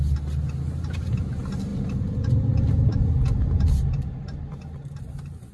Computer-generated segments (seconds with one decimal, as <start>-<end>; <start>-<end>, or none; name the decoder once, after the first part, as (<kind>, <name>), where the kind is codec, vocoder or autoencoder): none

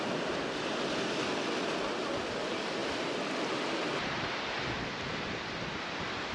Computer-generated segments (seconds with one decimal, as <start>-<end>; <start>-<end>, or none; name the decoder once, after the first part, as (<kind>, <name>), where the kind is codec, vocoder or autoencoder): none

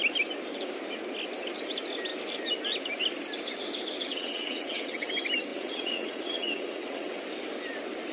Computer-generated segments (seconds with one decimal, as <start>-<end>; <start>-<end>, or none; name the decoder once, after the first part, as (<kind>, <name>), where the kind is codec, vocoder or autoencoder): 4.1-5.1 (vocoder, WaveNeXt); 5.5-7.2

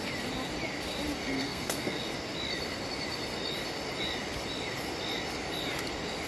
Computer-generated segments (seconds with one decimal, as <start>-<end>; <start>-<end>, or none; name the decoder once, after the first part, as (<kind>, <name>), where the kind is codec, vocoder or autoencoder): 1.2-2.0 (codec, SNAC)

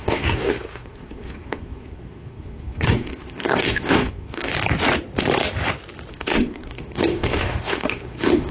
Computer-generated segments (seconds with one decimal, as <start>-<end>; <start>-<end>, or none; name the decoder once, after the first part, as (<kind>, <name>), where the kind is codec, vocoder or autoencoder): 0.0-4.5 (codec, SNAC); 6.1-8.5

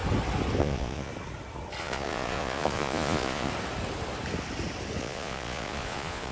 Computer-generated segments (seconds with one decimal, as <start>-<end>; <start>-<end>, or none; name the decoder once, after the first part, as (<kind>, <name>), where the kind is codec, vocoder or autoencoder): 0.6-1.1 (vocoder, Vocos); 1.8-3.5; 5.0-6.3

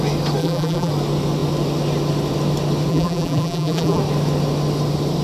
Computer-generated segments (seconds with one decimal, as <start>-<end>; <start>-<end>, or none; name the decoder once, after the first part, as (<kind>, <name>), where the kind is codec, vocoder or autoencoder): 0.4-0.9 (vocoder, BigVGAN v2); 2.9-4.0